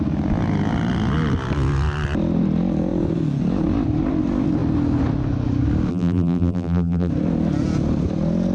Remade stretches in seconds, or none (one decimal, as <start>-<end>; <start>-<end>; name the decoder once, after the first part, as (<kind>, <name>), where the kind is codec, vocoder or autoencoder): 5.9-7.1 (vocoder, BigVGAN v2)